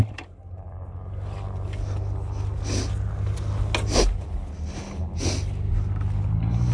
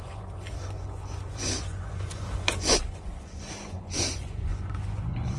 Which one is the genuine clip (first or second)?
first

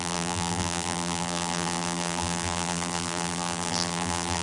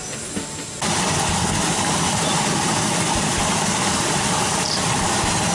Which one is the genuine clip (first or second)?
second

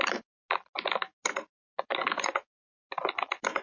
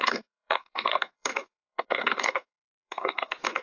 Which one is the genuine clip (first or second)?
first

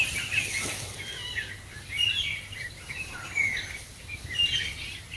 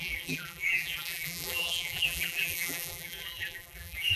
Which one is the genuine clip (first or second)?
first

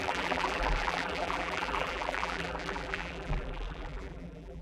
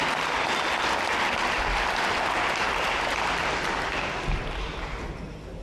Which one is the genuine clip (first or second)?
second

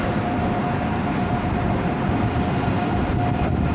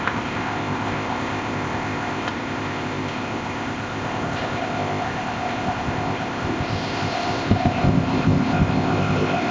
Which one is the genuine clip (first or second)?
first